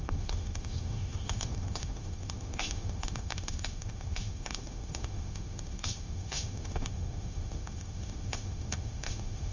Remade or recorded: remade